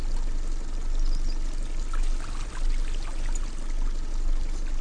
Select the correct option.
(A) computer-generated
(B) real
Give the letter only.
B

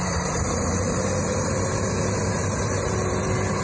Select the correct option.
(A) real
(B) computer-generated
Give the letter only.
B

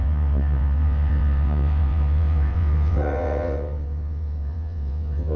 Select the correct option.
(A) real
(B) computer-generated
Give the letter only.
B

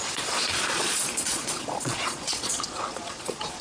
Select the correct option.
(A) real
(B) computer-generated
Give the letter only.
B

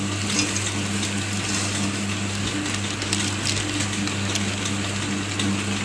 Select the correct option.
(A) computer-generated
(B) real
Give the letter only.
B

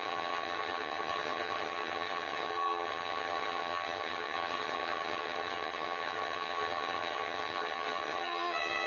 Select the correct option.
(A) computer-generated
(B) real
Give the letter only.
A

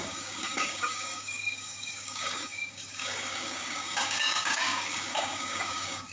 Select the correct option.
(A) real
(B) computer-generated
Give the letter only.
B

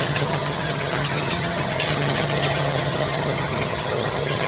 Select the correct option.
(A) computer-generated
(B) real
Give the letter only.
A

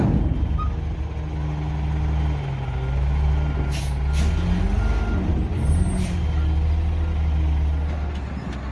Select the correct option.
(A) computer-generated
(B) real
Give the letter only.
B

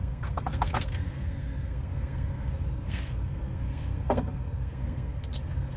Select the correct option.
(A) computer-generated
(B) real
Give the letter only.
A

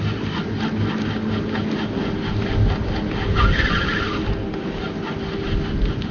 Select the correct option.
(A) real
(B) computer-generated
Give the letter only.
A